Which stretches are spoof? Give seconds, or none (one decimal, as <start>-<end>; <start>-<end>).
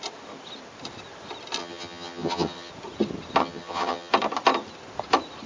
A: 1.6-2.7; 3.4-4.1